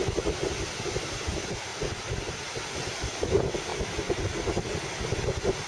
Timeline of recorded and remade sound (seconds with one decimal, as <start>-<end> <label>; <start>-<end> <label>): 0.0-5.7 recorded

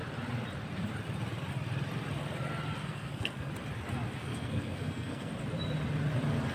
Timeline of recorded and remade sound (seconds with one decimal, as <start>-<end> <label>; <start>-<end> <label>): 0.0-2.8 recorded; 2.8-3.5 remade; 3.5-4.2 recorded; 4.2-5.3 remade; 5.3-6.5 recorded

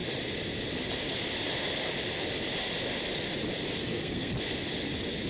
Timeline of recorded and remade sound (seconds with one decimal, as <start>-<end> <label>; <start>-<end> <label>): 0.0-3.8 recorded; 3.8-4.3 remade; 4.3-5.3 recorded

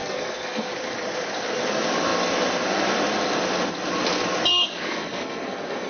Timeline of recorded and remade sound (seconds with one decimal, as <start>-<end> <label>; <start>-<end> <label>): 0.0-0.7 remade; 0.7-4.5 recorded; 4.5-5.9 remade

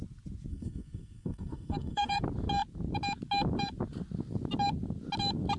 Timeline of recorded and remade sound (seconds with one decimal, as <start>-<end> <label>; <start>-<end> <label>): 0.0-0.5 recorded; 0.5-2.2 remade; 2.2-5.6 recorded

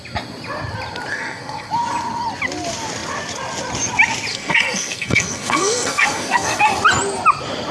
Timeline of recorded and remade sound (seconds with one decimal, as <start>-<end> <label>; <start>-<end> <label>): 0.0-1.1 recorded; 1.1-1.7 remade; 1.7-4.3 recorded; 4.3-6.7 remade; 6.7-7.7 recorded

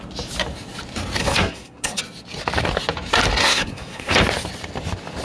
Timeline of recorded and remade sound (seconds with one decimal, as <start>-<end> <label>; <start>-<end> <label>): 0.0-1.2 recorded; 1.2-2.0 remade; 2.0-3.4 recorded; 3.4-4.1 remade; 4.1-5.2 recorded